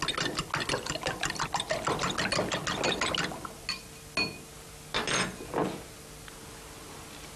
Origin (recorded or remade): recorded